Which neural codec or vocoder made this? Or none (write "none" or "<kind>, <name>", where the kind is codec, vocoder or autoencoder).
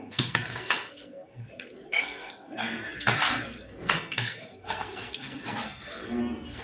codec, SNAC